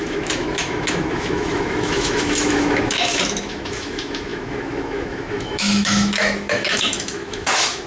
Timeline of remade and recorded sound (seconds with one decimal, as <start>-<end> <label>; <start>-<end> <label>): 0.0-7.9 remade